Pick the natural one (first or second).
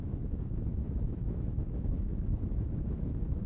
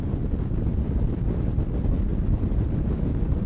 second